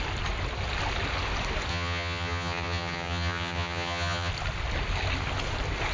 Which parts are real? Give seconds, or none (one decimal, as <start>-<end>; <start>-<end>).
0.0-1.7; 4.3-5.9